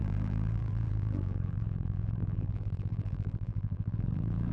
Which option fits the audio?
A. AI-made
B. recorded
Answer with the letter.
A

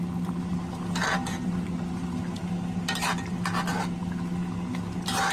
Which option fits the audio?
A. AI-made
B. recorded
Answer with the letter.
B